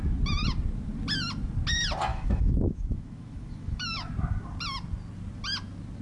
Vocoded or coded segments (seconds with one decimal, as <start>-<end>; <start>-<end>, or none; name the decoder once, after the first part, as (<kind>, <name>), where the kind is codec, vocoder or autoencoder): 2.1-4.1 (autoencoder, DAC-VAE)